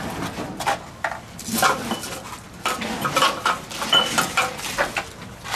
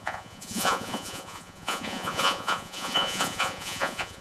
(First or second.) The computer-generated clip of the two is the second